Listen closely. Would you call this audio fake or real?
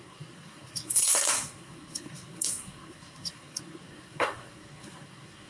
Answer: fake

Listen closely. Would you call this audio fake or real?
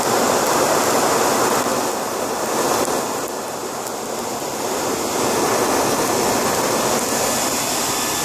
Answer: real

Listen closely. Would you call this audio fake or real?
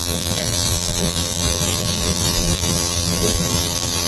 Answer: fake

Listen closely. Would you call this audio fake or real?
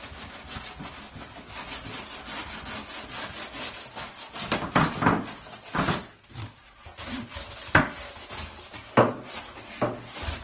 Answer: real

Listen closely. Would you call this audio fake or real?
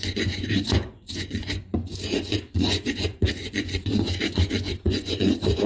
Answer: fake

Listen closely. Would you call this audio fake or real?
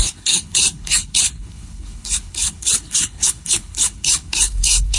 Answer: fake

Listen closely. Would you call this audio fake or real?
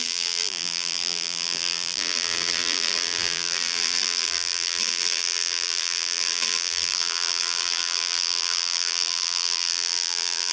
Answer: fake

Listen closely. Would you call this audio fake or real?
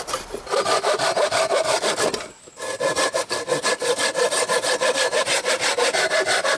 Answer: real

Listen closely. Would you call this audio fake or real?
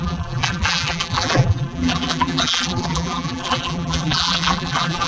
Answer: fake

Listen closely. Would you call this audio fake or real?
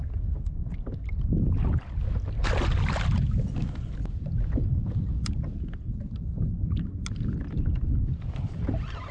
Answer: real